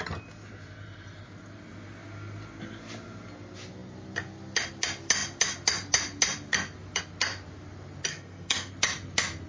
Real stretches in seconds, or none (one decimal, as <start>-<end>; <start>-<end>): 0.0-8.1; 8.7-9.5